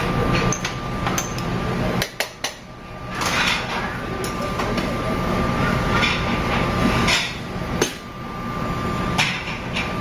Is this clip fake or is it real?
real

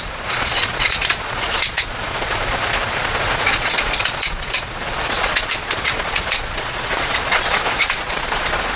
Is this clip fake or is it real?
fake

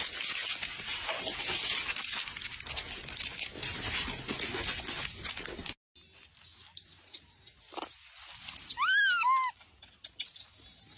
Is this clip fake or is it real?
real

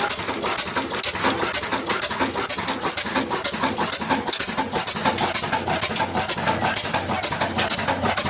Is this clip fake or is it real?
real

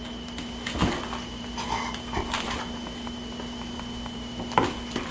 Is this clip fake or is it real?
real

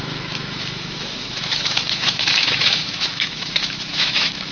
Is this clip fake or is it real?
fake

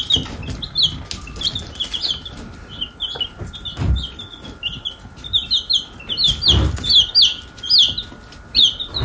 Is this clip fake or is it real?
real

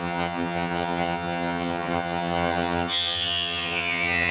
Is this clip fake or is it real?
fake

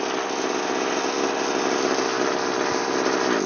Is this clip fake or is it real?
real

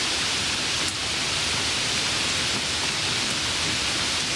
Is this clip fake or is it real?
fake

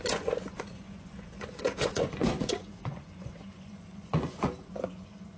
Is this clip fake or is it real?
fake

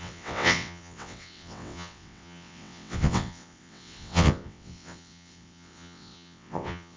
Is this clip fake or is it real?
fake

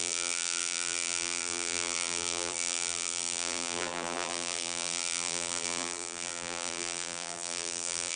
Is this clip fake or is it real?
fake